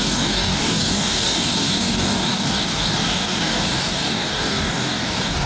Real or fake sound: fake